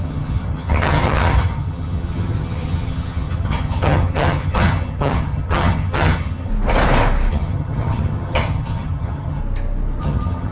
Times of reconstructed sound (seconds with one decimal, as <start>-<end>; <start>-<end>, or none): 0.0-6.5; 7.3-9.4; 10.0-10.5